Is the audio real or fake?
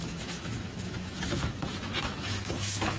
fake